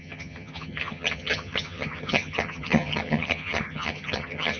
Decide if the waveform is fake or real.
fake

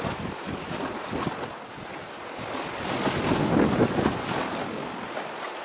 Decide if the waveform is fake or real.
real